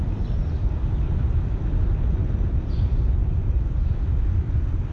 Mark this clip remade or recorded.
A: recorded